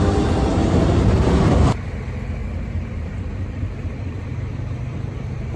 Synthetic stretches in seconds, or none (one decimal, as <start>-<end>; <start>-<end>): 2.4-5.6